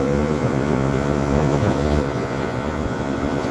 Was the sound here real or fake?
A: fake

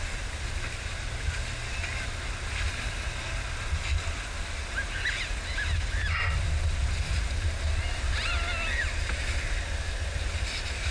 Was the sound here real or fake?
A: real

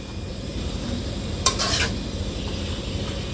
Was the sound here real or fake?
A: fake